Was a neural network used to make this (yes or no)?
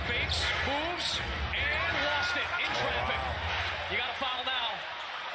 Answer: no